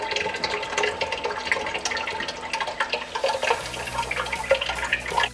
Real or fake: real